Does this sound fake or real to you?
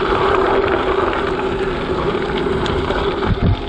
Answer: real